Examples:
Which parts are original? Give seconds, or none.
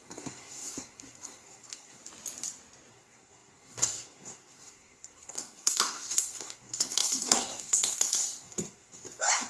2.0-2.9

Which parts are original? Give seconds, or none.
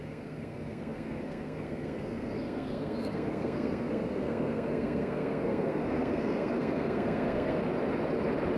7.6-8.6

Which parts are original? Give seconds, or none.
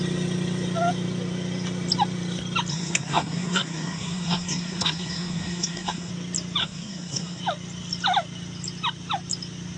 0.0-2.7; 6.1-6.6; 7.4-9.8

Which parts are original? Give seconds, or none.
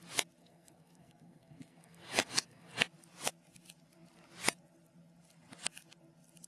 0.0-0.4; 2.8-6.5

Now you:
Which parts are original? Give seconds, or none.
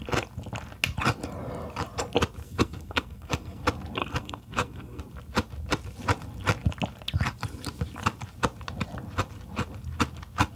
0.0-2.4; 3.6-4.0; 5.0-10.6